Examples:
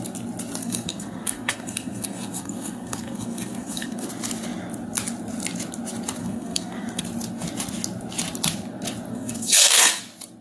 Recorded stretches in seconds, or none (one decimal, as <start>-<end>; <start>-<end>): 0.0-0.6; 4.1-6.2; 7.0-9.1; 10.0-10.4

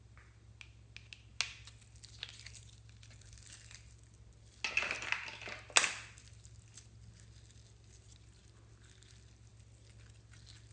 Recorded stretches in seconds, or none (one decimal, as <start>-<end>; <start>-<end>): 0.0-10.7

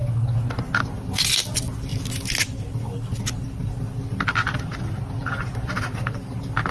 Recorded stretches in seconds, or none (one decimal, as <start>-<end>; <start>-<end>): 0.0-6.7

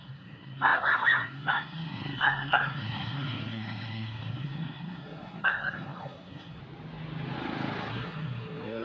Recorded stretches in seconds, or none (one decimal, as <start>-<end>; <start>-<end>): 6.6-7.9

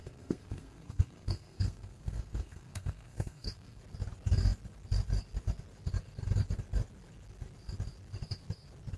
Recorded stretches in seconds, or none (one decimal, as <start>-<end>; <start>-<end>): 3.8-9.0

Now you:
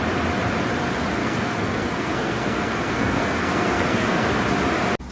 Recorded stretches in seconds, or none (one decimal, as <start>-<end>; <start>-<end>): 0.0-1.2; 4.3-5.1

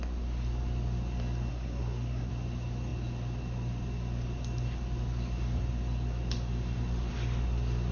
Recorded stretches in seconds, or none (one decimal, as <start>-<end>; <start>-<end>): 0.0-1.5; 2.3-7.9

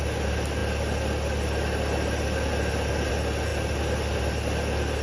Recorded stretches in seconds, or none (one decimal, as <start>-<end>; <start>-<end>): 0.0-5.0